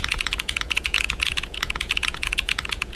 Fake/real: fake